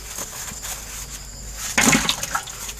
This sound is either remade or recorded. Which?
recorded